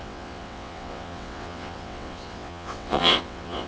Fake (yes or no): yes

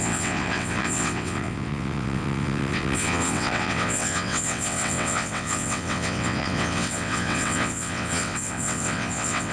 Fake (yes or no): yes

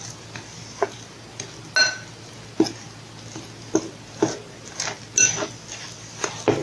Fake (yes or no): no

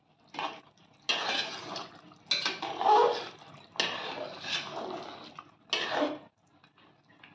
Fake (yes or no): no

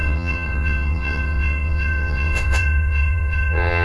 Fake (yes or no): yes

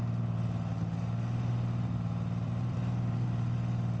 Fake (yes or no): no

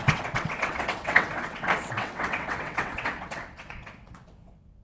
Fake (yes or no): yes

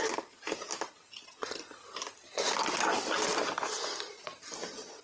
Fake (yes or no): no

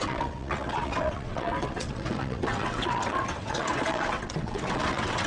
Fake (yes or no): yes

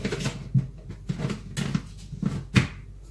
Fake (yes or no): no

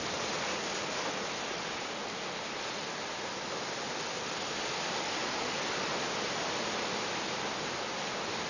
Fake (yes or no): no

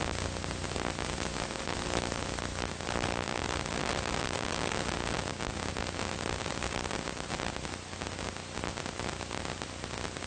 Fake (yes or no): no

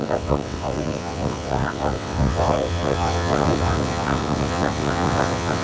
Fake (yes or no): yes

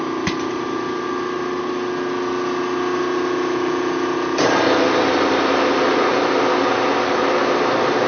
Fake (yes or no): no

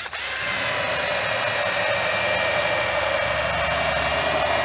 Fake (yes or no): no